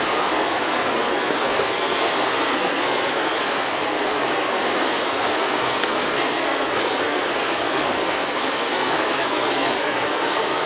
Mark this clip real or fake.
fake